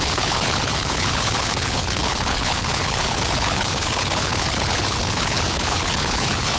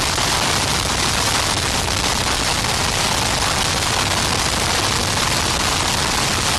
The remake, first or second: first